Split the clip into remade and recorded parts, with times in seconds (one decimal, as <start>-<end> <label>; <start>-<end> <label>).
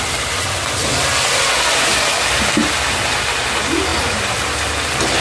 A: 0.0-5.2 recorded